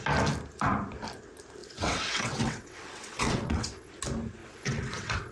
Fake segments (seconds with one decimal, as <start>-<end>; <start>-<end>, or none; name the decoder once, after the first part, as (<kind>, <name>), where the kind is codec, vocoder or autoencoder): 1.6-3.9 (vocoder, WaveNeXt); 4.4-5.3